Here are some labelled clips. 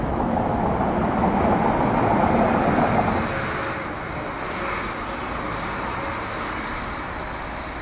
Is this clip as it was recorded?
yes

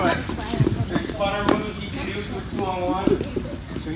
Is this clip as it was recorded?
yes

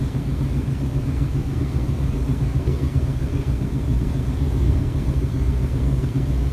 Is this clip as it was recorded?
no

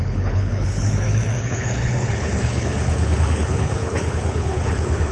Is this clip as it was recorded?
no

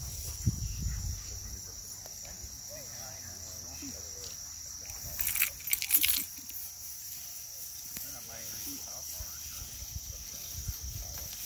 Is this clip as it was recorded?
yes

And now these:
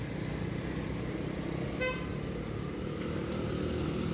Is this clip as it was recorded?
yes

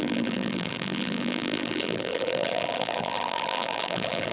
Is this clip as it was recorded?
no